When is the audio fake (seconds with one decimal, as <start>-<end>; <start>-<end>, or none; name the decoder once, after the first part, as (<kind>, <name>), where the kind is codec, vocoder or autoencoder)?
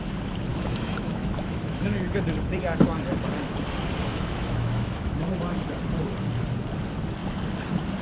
0.5-2.2 (autoencoder, DAC-VAE); 4.0-5.3